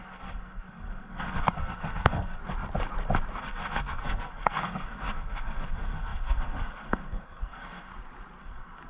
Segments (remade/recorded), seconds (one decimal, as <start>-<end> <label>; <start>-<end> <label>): 0.0-2.4 remade; 2.4-3.4 recorded; 3.4-7.9 remade; 7.9-8.4 recorded; 8.4-8.9 remade